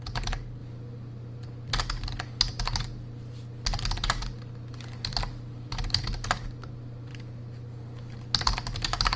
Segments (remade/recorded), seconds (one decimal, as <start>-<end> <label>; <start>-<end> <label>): 0.0-9.2 recorded